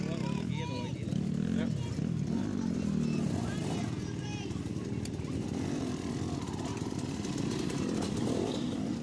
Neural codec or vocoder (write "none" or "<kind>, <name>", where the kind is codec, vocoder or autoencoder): none